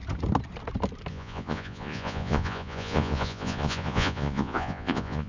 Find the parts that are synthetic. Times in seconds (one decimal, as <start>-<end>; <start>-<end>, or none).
1.1-5.3